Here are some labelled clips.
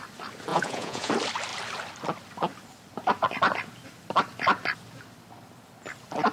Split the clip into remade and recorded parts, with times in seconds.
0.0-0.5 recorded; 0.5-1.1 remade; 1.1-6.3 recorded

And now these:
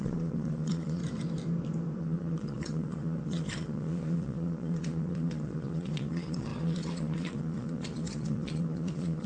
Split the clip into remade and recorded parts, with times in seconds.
0.0-1.0 remade; 1.0-2.0 recorded; 2.0-9.3 remade

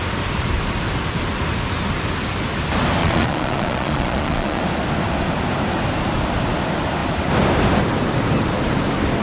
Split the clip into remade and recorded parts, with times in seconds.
0.0-3.0 recorded; 3.0-4.6 remade; 4.6-9.2 recorded

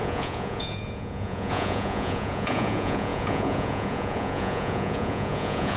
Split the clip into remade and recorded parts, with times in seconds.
0.0-5.8 remade

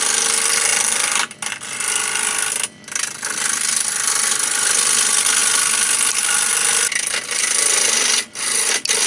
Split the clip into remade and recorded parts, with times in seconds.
0.0-9.1 recorded

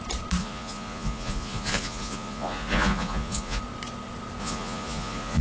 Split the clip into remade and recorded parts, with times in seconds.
0.0-0.4 recorded; 0.4-3.6 remade; 3.6-4.4 recorded; 4.4-5.4 remade

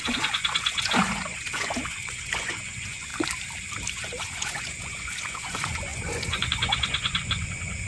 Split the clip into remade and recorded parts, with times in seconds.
0.0-3.1 remade; 3.1-3.9 recorded; 3.9-7.9 remade

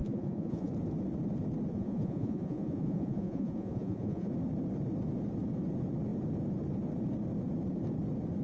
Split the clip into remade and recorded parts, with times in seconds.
0.0-0.7 remade; 0.7-1.7 recorded; 1.7-4.3 remade; 4.3-8.4 recorded